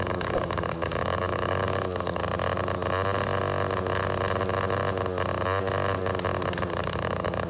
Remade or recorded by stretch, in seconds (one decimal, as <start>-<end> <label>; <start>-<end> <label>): 0.0-2.2 remade; 2.2-6.7 recorded; 6.7-7.5 remade